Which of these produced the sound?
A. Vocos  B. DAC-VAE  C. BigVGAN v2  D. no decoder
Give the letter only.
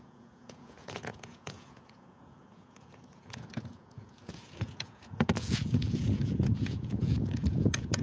A